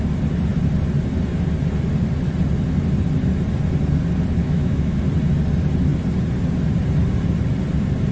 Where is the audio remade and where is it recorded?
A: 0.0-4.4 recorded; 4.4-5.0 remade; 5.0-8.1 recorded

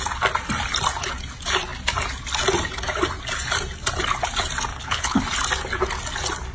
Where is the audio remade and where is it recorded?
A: 0.0-4.7 recorded; 4.7-5.2 remade; 5.2-6.5 recorded

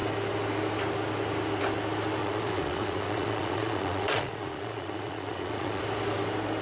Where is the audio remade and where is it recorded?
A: 0.0-2.2 recorded; 2.2-5.8 remade; 5.8-6.6 recorded

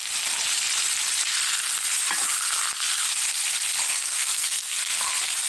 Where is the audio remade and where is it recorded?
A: 0.0-3.9 recorded; 3.9-5.1 remade; 5.1-5.5 recorded

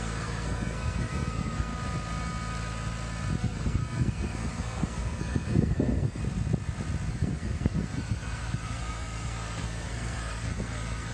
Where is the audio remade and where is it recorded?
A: 0.0-1.7 remade; 1.7-3.4 recorded; 3.4-6.2 remade; 6.2-7.1 recorded; 7.1-11.1 remade

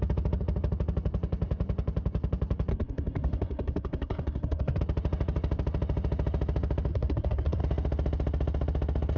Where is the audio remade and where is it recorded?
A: 0.0-2.7 recorded; 2.7-4.8 remade; 4.8-6.9 recorded; 6.9-7.6 remade; 7.6-9.2 recorded